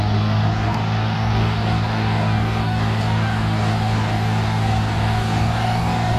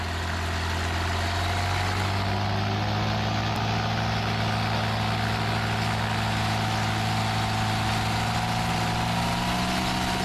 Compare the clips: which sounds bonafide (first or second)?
second